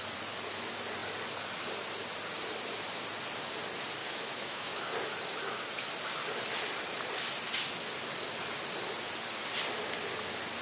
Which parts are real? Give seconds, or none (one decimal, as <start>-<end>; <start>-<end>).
0.0-4.0; 4.8-10.6